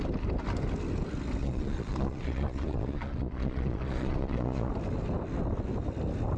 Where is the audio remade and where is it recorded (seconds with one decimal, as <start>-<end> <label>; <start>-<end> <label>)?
0.0-1.4 recorded; 1.4-4.7 remade; 4.7-6.4 recorded